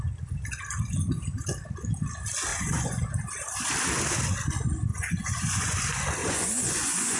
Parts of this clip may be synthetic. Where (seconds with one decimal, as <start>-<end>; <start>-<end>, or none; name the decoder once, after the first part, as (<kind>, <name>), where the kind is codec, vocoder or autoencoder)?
2.5-3.1 (vocoder, Vocos); 4.9-5.8; 6.2-7.2